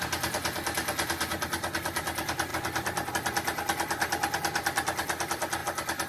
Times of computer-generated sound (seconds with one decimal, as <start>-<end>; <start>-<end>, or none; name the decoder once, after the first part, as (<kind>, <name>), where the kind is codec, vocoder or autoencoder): none